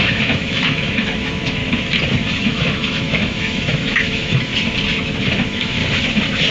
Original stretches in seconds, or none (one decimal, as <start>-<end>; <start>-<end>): 1.6-2.4; 4.5-5.2; 5.8-6.5